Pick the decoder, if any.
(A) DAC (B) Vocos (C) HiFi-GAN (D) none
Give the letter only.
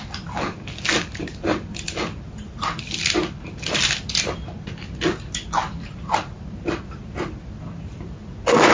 D